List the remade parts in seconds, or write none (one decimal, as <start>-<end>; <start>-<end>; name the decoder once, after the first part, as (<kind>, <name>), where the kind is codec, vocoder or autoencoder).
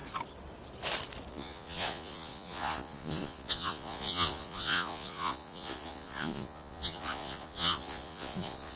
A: 1.3-8.8 (vocoder, Vocos)